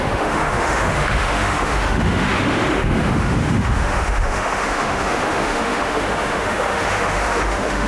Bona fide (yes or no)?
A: no